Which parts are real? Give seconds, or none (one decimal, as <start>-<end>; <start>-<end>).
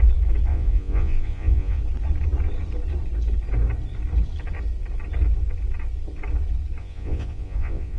0.0-0.5; 1.8-6.8